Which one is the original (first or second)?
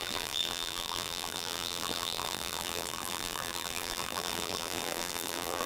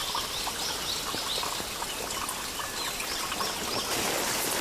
second